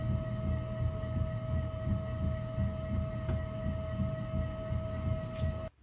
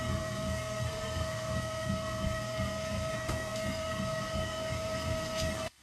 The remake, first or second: second